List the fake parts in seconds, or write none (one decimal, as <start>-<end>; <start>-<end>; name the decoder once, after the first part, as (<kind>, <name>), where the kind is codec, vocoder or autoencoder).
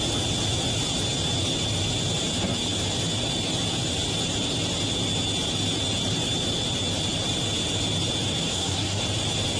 8.5-9.0 (codec, SNAC)